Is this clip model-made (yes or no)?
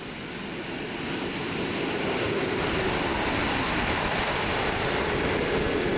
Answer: no